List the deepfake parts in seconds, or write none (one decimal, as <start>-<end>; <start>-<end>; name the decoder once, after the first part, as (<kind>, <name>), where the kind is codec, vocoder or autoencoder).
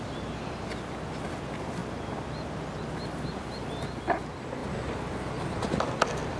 none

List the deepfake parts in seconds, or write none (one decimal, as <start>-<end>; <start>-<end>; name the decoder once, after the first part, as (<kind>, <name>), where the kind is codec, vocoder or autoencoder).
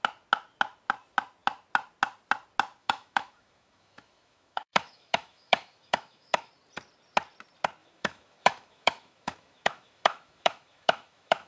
2.8-6.5 (autoencoder, DAC-VAE); 7.8-11.5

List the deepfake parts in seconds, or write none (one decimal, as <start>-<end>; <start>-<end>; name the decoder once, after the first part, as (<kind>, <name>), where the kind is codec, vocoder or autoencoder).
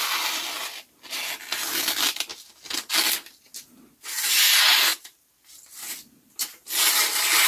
none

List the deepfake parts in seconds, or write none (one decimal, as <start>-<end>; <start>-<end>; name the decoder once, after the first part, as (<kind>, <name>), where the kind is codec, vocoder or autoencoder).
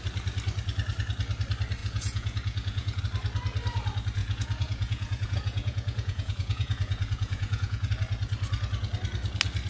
1.8-3.0 (vocoder, Vocos); 4.2-7.9